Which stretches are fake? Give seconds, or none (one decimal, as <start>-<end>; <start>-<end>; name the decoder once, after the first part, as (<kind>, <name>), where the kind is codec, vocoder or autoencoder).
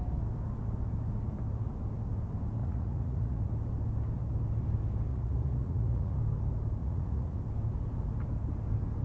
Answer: 2.6-3.5 (vocoder, Vocos); 5.1-6.2; 6.8-7.4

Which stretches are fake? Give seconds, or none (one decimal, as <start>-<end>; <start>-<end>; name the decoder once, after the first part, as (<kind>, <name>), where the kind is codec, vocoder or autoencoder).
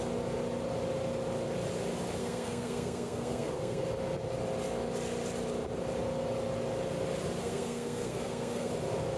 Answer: 2.2-3.8 (codec, SNAC); 7.4-8.7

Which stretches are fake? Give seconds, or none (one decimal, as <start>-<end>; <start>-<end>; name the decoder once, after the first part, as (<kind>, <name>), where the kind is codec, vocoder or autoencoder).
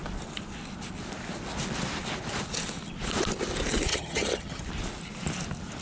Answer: 3.9-4.6 (vocoder, HiFi-GAN)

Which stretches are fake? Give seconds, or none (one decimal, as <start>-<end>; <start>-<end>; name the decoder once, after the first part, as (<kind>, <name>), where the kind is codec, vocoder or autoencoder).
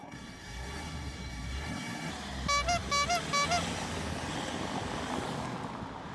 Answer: 0.0-2.1 (codec, SNAC)